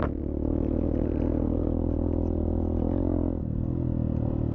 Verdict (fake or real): real